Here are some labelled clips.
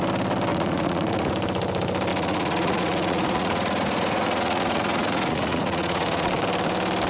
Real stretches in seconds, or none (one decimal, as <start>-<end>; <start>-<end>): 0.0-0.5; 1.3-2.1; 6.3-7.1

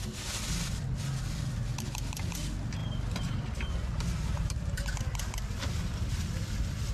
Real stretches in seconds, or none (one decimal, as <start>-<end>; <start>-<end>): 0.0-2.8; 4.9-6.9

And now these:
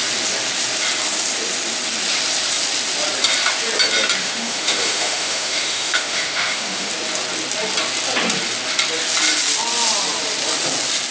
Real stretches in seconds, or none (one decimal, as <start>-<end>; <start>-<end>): 0.0-4.2; 6.9-11.1

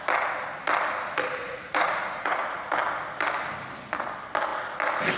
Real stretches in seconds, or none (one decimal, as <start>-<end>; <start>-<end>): 0.0-1.4; 2.7-5.2

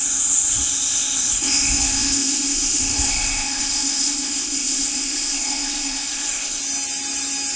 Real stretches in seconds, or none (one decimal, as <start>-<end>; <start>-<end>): 6.6-7.6

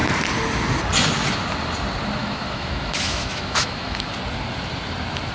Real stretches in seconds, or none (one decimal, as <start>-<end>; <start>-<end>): 0.0-2.2; 4.1-5.3

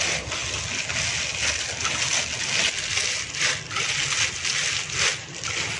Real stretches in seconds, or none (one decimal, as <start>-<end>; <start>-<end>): 0.0-3.0; 3.6-5.1

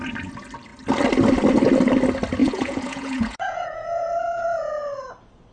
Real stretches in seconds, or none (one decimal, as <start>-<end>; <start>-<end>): 0.0-2.4; 4.7-5.5